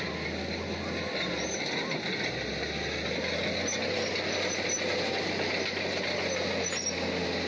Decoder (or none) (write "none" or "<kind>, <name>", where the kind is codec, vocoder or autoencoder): none